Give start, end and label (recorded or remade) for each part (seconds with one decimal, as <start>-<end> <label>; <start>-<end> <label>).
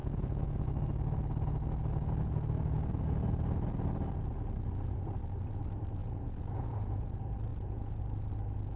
0.0-0.7 remade; 0.7-6.0 recorded; 6.0-7.1 remade; 7.1-7.5 recorded; 7.5-8.0 remade; 8.0-8.8 recorded